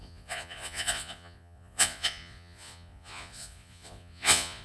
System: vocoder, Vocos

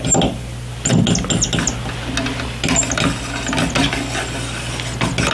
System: none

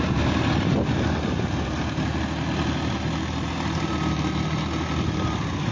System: none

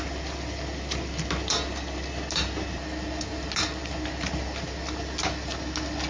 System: none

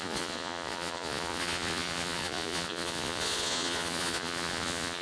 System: vocoder, Vocos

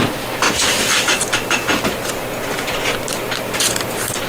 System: none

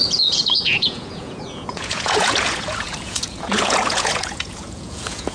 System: vocoder, Vocos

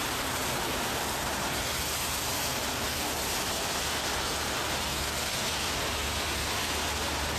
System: none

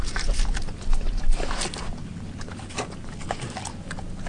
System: none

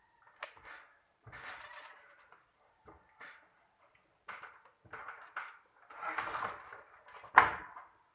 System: none